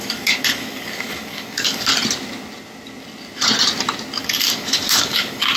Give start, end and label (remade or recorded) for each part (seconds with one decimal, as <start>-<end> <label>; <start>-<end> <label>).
0.0-1.9 remade; 1.9-4.2 recorded; 4.2-5.6 remade